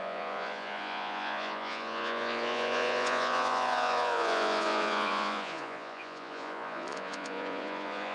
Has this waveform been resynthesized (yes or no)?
yes